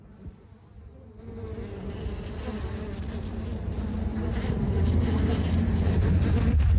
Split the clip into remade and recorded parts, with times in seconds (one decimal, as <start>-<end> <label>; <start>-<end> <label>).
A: 0.0-3.5 recorded; 3.5-6.8 remade